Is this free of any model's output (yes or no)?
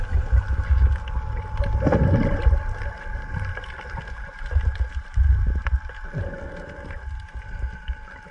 yes